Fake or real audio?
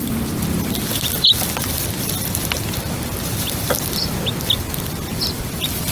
fake